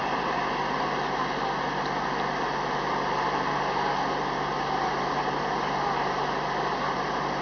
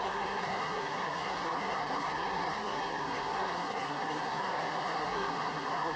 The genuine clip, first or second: first